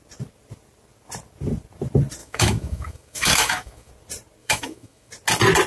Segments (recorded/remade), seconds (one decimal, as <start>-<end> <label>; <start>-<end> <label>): 0.0-2.2 recorded; 2.2-3.9 remade; 3.9-4.4 recorded; 4.4-5.1 remade; 5.1-5.7 recorded